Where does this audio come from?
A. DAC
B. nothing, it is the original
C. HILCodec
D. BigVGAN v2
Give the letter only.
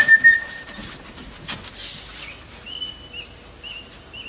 B